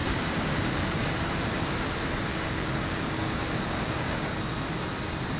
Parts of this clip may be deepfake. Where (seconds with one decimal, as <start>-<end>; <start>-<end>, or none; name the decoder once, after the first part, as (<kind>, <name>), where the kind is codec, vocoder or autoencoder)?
0.0-1.1 (codec, DAC); 2.3-4.3